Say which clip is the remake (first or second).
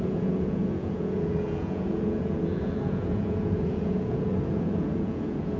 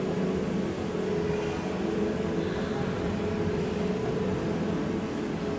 first